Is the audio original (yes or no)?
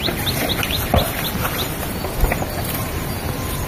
yes